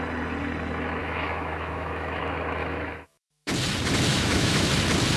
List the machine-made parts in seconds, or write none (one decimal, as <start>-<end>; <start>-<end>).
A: 1.0-2.2; 2.6-3.5; 4.1-4.7